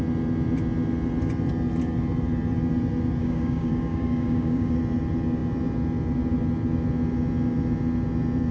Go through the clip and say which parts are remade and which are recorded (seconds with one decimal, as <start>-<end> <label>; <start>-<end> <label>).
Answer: 0.0-3.2 recorded; 3.2-4.8 remade; 4.8-8.5 recorded

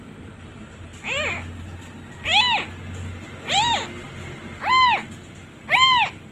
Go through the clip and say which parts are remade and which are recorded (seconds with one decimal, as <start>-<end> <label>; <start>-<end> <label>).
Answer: 0.0-6.3 recorded

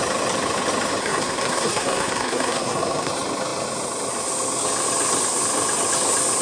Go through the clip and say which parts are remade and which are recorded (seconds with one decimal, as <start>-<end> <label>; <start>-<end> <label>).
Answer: 0.0-1.0 recorded; 1.0-3.1 remade; 3.1-6.4 recorded